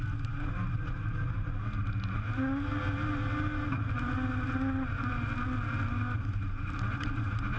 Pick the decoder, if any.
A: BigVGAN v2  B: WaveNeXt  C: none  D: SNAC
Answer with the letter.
C